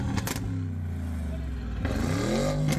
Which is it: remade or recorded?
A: recorded